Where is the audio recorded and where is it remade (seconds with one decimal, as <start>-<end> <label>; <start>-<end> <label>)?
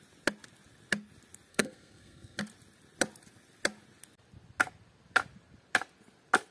0.0-1.5 recorded; 1.5-2.4 remade; 2.4-6.5 recorded